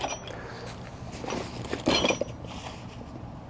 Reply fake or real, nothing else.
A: real